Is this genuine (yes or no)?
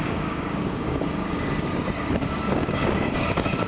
no